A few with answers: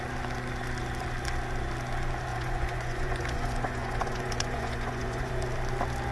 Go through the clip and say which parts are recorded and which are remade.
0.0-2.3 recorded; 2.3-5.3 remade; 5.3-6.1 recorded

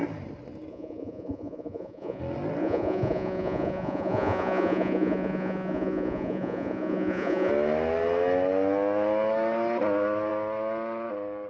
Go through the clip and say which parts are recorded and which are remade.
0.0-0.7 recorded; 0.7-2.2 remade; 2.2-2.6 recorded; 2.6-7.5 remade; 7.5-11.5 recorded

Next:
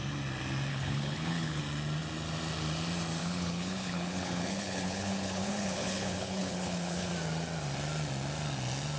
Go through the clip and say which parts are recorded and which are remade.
0.0-0.7 recorded; 0.7-1.6 remade; 1.6-3.2 recorded; 3.2-7.1 remade; 7.1-9.0 recorded

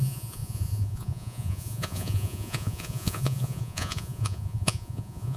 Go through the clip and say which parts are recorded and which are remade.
0.0-5.4 remade

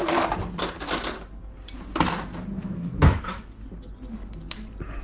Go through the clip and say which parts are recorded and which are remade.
0.0-2.6 recorded; 2.6-3.4 remade; 3.4-5.0 recorded

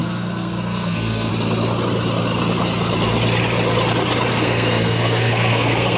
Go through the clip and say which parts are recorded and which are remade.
0.0-1.3 remade; 1.3-4.3 recorded; 4.3-6.0 remade

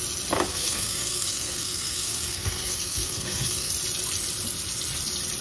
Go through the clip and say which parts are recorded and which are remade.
0.0-0.5 recorded; 0.5-3.7 remade; 3.7-5.4 recorded